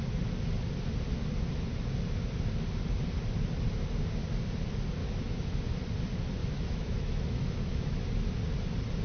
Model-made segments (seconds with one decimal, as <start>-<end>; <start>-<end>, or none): 5.0-5.7; 6.4-8.1